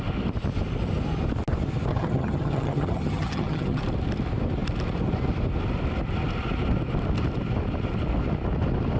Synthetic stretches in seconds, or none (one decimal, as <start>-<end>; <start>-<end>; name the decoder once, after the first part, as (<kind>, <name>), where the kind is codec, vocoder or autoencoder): 1.9-3.8 (vocoder, HiFi-GAN)